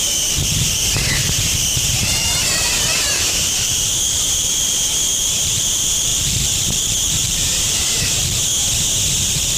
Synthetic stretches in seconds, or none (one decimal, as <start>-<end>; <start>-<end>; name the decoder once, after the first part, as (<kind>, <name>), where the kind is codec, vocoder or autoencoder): 0.0-8.5 (vocoder, BigVGAN v2); 9.2-9.6